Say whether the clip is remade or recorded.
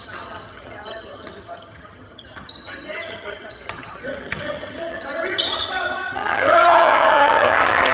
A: remade